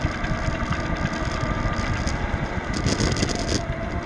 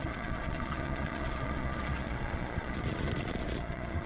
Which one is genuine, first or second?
first